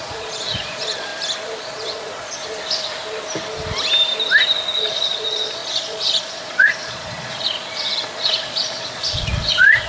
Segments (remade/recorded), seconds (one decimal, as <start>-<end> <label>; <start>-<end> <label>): 0.0-1.1 remade; 1.1-1.6 recorded; 1.6-2.4 remade; 2.4-4.8 recorded; 4.8-9.9 remade